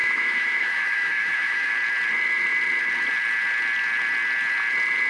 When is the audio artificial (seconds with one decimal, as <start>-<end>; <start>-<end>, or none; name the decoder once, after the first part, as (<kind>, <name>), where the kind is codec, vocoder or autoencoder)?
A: 0.0-1.7 (autoencoder, DAC-VAE)